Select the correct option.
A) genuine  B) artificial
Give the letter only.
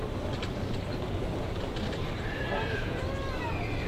A